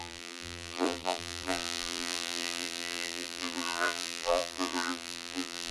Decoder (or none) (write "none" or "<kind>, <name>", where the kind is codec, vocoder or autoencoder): vocoder, BigVGAN v2